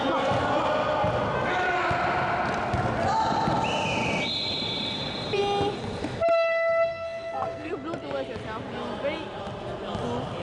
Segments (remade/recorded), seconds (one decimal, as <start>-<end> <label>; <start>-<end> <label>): 0.0-6.9 recorded; 6.9-7.7 remade; 7.7-10.4 recorded